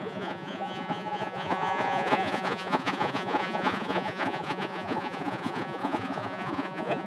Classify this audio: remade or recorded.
remade